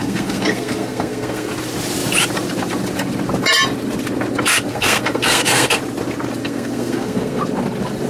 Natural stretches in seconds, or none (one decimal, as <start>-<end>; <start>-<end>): 1.5-4.7; 5.8-6.4; 7.4-8.1